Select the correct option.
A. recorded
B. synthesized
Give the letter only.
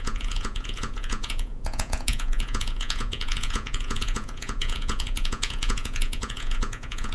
B